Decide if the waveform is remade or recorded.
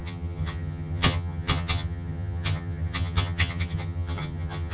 remade